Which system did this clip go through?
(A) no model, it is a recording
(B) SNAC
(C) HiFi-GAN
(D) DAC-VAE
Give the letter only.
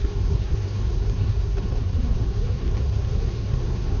B